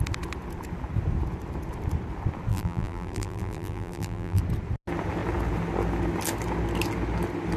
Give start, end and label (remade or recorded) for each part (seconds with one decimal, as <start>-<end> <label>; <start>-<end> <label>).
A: 0.0-2.5 recorded; 2.5-4.4 remade; 4.4-7.6 recorded